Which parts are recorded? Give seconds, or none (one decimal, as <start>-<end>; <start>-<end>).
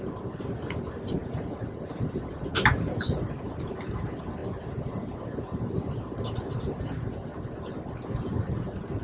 0.0-9.0